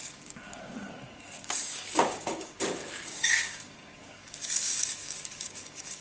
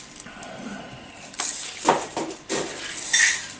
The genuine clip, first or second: second